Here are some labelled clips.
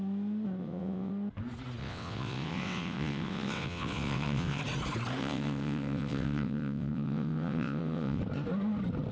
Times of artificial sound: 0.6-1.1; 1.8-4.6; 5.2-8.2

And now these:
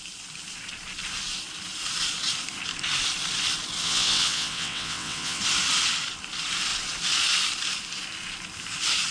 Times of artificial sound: 3.8-5.4

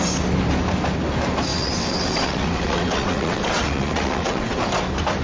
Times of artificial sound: 1.5-4.6

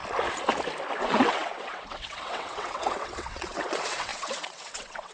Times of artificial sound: 1.0-5.1

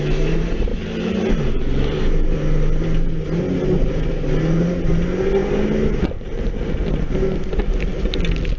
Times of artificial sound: none

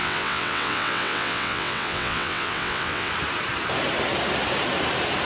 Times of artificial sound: 0.0-3.1

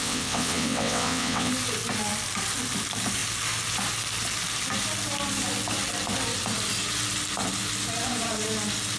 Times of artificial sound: 0.0-1.5